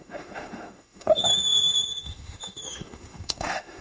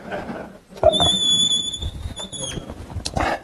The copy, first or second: first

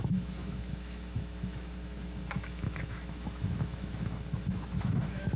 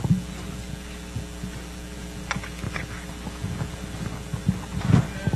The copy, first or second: first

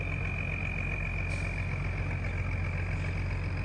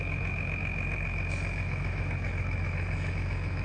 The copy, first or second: second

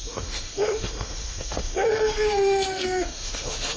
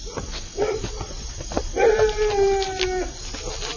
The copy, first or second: first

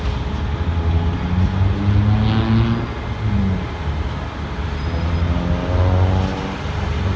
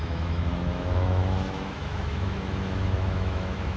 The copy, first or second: second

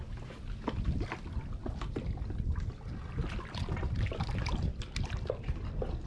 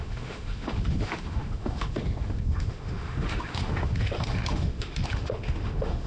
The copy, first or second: second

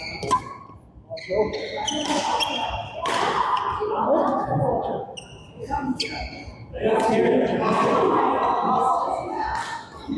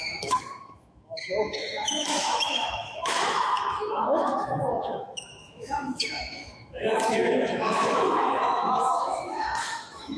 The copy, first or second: second